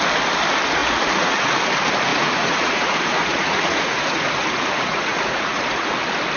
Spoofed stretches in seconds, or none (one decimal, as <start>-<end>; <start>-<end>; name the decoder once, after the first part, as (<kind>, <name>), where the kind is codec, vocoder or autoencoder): 0.8-1.5 (vocoder, Vocos); 2.1-5.9